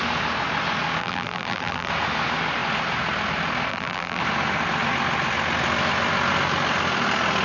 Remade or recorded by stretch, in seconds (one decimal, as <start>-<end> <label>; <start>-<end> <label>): 0.0-1.0 recorded; 1.0-1.9 remade; 1.9-3.7 recorded; 3.7-4.2 remade; 4.2-7.4 recorded